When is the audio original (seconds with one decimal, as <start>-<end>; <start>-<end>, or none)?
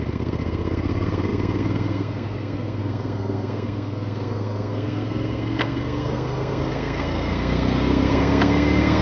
none